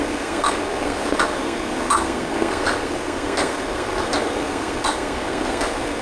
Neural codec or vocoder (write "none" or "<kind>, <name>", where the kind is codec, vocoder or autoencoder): codec, SNAC